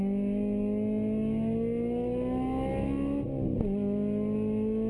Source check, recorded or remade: recorded